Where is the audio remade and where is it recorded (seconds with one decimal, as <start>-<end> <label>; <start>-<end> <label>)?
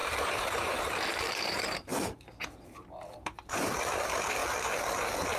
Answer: 0.0-1.9 remade; 1.9-3.1 recorded; 3.1-4.4 remade; 4.4-5.4 recorded